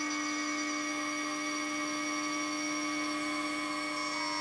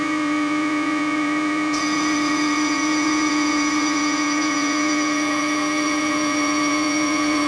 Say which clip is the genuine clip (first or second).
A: first